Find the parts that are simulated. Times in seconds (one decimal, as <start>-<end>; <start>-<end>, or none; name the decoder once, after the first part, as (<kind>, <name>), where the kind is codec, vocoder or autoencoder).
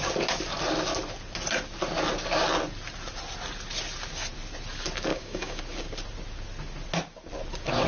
5.1-5.6 (codec, DAC)